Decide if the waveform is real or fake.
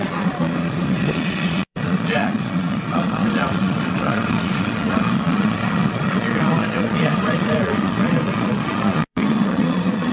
fake